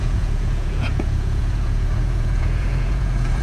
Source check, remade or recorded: remade